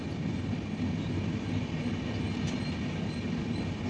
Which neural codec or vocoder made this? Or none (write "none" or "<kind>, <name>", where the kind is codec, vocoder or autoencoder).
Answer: none